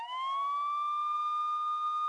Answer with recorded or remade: recorded